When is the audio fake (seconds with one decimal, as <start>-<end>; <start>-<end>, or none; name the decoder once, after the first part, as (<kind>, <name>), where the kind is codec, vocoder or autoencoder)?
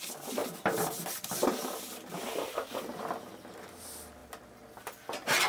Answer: none